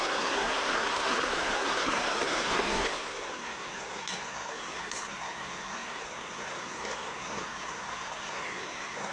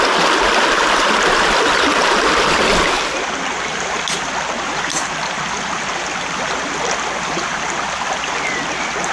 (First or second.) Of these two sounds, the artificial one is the first